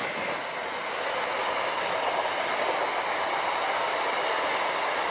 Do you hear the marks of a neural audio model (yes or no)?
no